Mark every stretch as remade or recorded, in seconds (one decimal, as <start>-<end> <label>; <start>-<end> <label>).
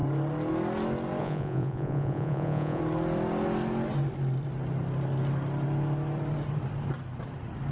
0.0-1.2 recorded; 1.2-2.8 remade; 2.8-7.7 recorded